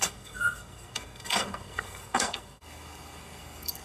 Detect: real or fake fake